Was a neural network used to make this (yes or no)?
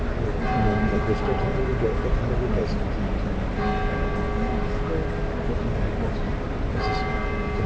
no